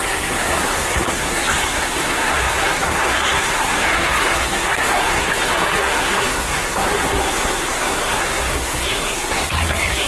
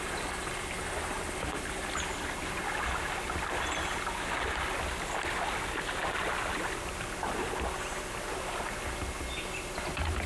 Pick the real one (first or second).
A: second